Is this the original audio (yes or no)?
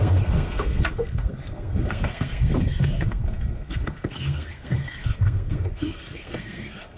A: no